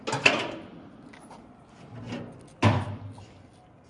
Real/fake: real